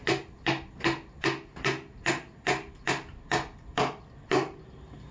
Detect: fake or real real